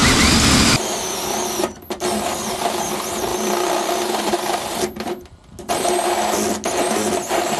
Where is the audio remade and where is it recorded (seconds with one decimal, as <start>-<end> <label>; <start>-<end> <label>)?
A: 0.0-2.9 remade; 2.9-3.3 recorded; 3.3-5.6 remade; 5.6-7.6 recorded